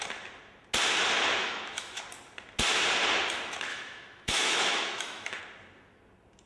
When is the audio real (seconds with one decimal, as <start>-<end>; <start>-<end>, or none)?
0.0-1.4; 2.0-3.7; 5.4-6.5